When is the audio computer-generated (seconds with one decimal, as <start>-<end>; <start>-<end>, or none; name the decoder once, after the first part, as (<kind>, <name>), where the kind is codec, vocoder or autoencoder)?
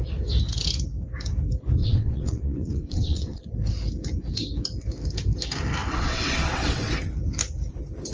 1.8-3.4 (vocoder, WaveNeXt); 5.8-6.9